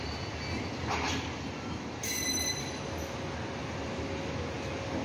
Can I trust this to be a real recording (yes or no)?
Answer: yes